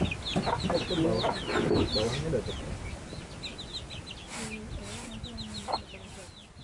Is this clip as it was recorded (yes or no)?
yes